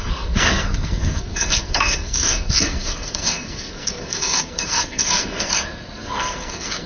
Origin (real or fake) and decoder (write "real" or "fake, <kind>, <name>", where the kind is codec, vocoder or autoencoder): fake, codec, SNAC